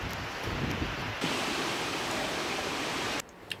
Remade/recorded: recorded